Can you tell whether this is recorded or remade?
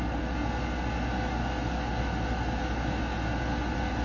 recorded